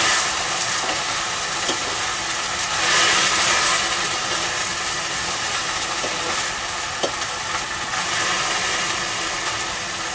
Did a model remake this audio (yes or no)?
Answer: no